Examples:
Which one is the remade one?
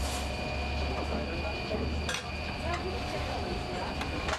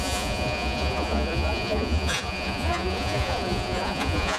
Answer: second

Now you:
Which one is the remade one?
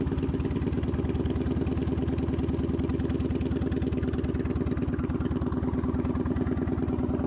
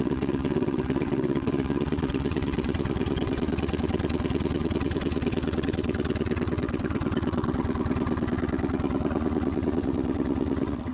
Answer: second